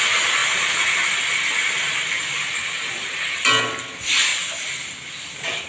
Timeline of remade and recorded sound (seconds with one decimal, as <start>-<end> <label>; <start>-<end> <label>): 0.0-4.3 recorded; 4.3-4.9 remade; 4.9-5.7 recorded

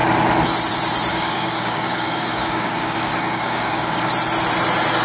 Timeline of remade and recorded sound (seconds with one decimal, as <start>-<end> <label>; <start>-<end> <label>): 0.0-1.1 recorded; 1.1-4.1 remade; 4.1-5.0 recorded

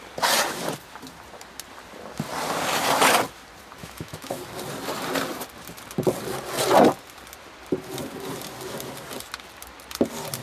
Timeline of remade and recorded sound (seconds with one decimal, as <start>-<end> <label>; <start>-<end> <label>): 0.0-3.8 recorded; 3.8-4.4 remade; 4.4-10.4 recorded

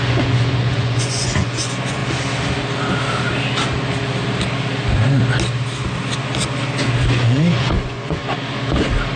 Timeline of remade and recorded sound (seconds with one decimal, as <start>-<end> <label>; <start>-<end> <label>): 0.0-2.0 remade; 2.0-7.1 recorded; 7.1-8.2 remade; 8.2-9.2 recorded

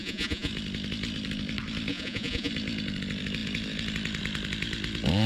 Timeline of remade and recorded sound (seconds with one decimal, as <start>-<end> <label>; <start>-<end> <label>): 0.0-0.5 remade; 0.5-1.9 recorded; 1.9-2.5 remade; 2.5-5.3 recorded